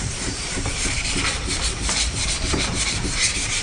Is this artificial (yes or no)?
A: yes